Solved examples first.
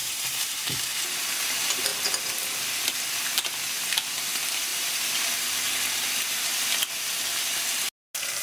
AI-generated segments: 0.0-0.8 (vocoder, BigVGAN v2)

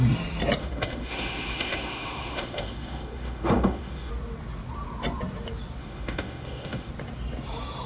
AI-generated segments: 0.6-4.1 (autoencoder, DAC-VAE); 5.8-6.9